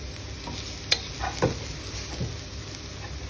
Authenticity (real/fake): real